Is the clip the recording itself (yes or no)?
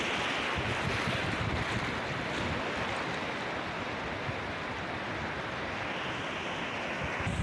yes